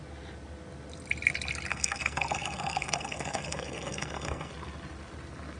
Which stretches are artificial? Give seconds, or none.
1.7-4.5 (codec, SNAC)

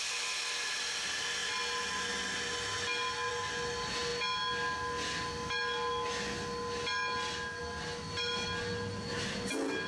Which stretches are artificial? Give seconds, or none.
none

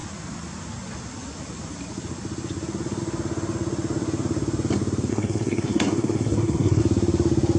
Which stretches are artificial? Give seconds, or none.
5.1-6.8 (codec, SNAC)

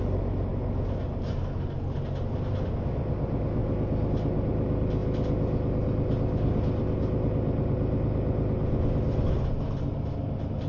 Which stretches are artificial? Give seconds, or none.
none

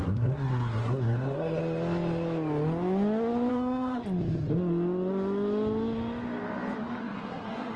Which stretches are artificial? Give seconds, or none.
0.0-1.6 (codec, SNAC); 3.5-4.0; 7.0-7.8

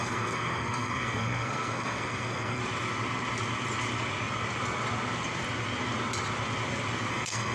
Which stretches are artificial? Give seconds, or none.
0.0-2.6 (codec, SNAC); 7.1-7.5

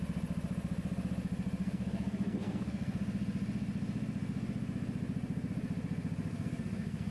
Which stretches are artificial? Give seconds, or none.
1.6-3.0 (codec, SNAC); 6.3-7.1

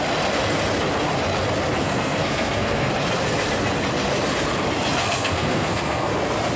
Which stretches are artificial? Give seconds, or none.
1.8-2.9 (codec, SNAC); 5.0-6.1